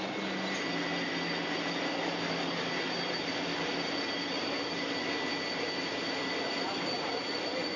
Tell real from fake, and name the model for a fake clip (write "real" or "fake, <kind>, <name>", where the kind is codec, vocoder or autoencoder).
real